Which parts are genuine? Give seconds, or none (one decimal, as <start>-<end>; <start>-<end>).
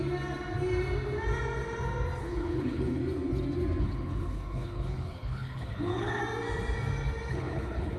0.0-2.2; 3.0-3.8; 6.2-7.3